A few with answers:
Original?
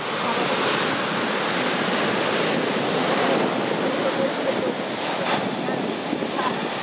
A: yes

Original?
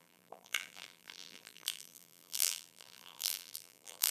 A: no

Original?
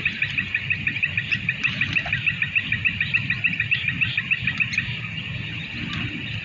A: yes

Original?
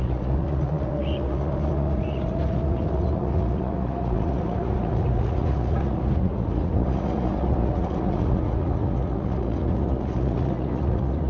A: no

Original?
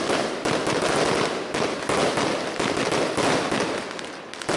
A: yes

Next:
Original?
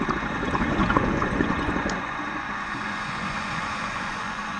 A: no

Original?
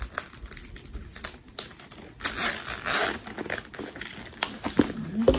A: yes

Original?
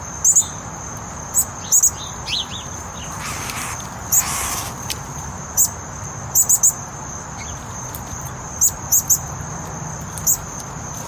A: yes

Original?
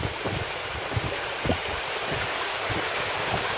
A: no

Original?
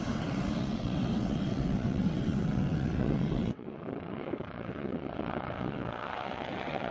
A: no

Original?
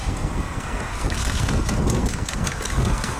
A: no